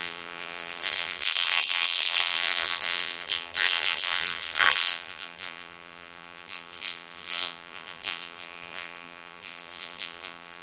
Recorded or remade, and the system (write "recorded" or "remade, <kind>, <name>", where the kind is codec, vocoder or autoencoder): remade, vocoder, BigVGAN v2